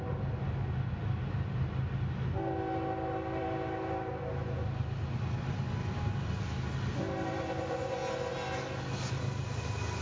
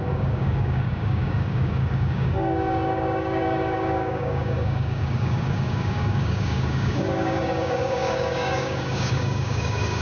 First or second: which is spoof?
second